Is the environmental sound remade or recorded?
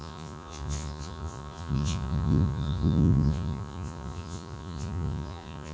remade